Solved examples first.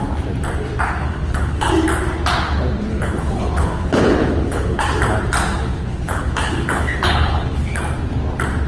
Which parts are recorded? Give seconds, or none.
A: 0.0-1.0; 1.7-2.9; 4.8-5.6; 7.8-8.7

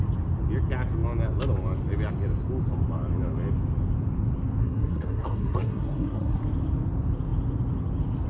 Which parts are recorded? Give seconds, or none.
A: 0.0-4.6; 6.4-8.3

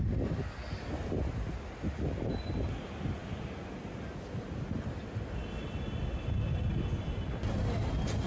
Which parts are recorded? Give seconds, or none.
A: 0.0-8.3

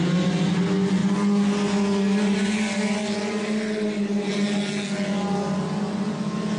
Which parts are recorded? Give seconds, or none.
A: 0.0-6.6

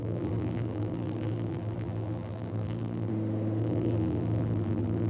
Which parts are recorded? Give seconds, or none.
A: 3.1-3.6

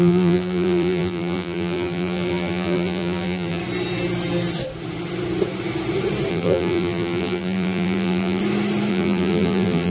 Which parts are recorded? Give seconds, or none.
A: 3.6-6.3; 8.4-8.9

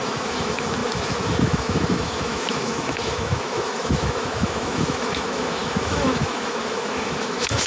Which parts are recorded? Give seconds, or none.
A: none